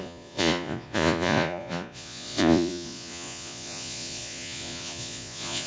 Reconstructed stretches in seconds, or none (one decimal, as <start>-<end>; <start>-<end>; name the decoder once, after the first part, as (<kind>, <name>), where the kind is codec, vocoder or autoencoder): 0.0-5.7 (vocoder, Vocos)